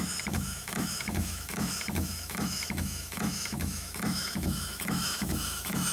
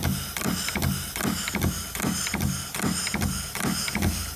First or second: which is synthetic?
first